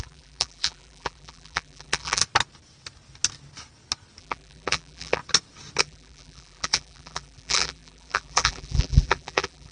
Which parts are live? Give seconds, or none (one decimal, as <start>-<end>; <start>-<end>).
2.2-4.2; 5.2-5.8